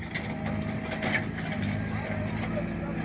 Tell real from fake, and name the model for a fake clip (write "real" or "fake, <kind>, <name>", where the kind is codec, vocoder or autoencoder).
real